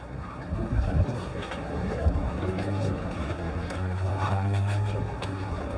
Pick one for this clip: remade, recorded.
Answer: remade